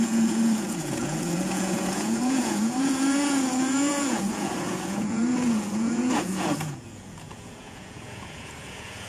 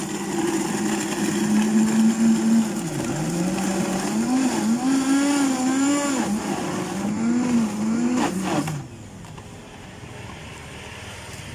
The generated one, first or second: first